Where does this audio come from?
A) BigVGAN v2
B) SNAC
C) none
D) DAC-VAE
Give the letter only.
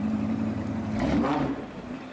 A